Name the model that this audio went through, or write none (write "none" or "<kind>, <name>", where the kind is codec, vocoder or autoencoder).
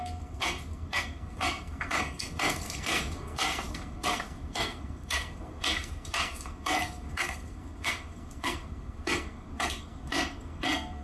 codec, SNAC